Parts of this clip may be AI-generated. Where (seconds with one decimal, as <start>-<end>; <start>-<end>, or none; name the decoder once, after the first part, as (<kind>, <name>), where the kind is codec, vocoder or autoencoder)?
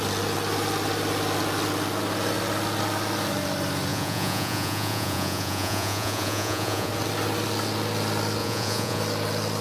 3.9-6.9 (vocoder, Vocos); 8.4-9.0